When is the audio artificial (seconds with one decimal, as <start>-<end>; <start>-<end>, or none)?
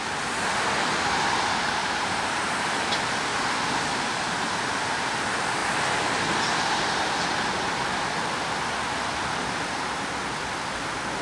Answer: 1.8-2.7